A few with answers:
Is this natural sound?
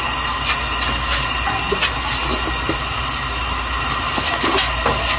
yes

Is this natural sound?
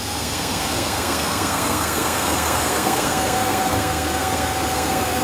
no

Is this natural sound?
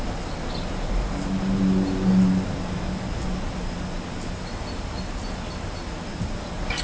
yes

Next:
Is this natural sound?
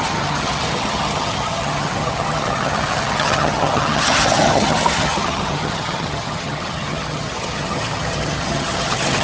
no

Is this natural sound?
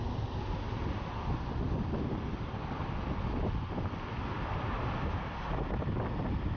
yes